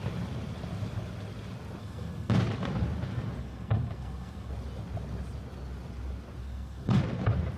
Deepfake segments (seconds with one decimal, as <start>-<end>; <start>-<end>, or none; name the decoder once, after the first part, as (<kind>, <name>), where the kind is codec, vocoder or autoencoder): 1.8-2.3 (codec, SNAC); 3.4-4.5; 6.4-7.0